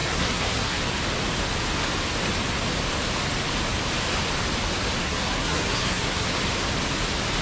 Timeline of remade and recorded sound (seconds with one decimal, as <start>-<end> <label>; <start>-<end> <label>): 0.0-0.8 remade; 0.8-5.0 recorded; 5.0-6.4 remade; 6.4-7.4 recorded